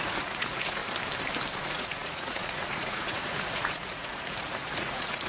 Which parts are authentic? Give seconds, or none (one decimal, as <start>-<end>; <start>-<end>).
0.8-1.6